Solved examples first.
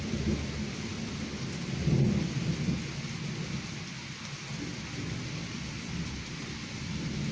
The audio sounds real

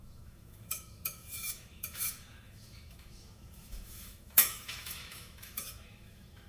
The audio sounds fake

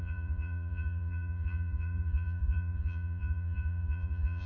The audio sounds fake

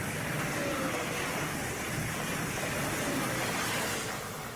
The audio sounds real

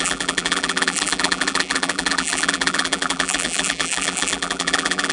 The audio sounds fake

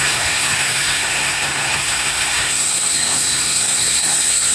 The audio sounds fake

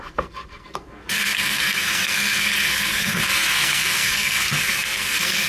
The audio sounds fake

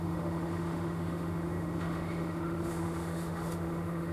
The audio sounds fake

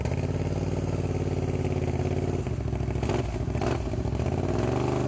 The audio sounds real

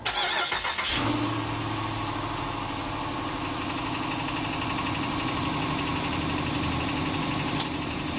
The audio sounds real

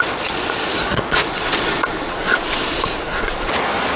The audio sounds fake